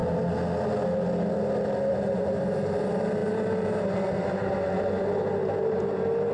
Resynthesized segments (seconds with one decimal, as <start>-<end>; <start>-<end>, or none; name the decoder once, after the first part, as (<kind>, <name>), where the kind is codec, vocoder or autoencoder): 1.9-6.3 (vocoder, BigVGAN v2)